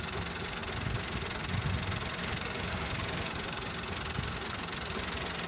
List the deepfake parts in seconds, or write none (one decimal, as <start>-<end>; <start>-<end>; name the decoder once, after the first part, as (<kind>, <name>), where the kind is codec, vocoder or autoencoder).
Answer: 2.2-3.7 (codec, DAC)